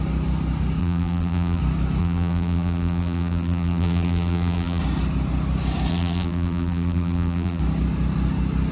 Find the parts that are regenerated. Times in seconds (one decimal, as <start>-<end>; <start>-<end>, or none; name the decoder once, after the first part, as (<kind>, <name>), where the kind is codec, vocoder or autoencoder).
0.8-1.6 (vocoder, BigVGAN v2); 2.0-4.8; 5.9-7.6